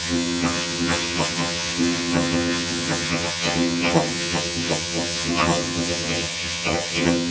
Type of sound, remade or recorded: remade